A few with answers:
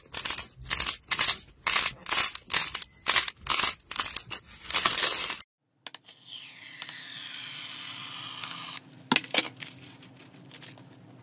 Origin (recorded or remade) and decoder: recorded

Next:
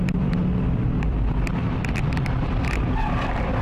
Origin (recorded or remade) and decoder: remade, vocoder, BigVGAN v2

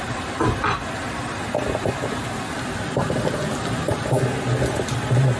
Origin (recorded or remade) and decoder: recorded